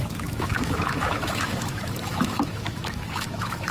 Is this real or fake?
fake